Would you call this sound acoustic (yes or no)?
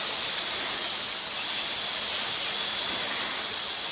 yes